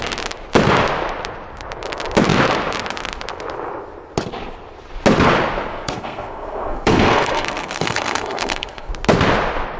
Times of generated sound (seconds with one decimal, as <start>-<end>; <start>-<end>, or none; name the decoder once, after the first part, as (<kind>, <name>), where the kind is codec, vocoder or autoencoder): 5.7-8.9 (codec, SNAC)